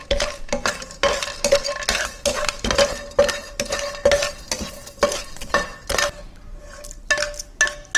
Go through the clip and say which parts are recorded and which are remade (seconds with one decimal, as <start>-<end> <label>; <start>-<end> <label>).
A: 0.0-8.0 recorded